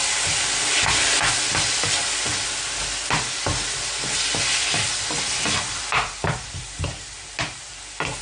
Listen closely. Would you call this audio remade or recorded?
recorded